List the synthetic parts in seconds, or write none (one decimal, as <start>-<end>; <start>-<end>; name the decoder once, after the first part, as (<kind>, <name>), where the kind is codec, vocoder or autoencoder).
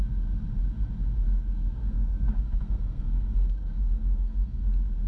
1.5-4.6 (codec, SNAC)